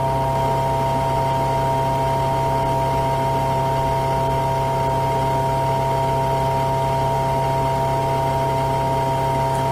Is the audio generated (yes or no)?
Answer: no